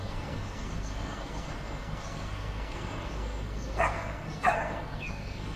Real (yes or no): no